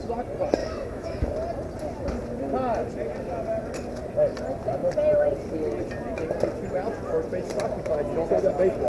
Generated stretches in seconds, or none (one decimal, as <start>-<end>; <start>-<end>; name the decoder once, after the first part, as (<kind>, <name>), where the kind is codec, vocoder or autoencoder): 0.6-1.3 (autoencoder, DAC-VAE)